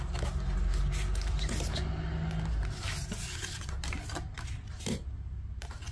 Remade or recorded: recorded